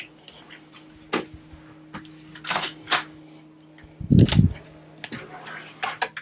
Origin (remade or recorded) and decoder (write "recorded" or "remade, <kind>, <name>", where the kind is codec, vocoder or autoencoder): recorded